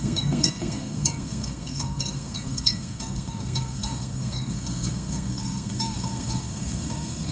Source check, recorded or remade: remade